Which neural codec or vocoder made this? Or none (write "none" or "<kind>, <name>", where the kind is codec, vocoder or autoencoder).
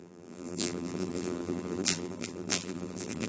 vocoder, BigVGAN v2